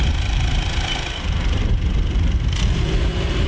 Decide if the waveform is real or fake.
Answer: fake